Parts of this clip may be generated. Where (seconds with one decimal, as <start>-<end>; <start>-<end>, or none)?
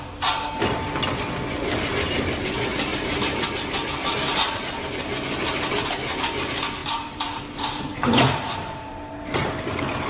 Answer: 2.9-3.4; 6.8-9.5